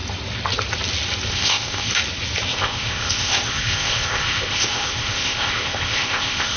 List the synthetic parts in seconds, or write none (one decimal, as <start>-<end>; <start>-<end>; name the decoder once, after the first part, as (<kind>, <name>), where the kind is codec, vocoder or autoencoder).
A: 1.3-1.9 (codec, ZipCodec); 2.5-6.6